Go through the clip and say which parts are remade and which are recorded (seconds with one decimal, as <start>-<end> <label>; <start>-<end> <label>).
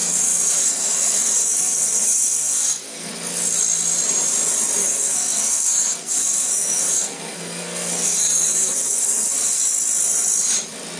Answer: 0.0-3.1 remade; 3.1-4.8 recorded; 4.8-9.6 remade; 9.6-11.0 recorded